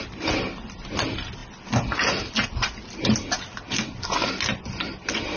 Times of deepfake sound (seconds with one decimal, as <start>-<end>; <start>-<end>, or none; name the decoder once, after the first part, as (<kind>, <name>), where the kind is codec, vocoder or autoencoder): none